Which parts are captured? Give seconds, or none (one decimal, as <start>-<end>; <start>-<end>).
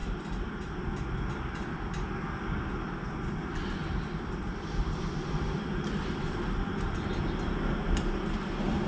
1.8-3.8; 7.2-8.9